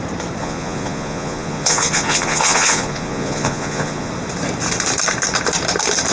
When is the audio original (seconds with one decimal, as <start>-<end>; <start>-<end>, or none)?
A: 0.0-0.4; 4.1-6.1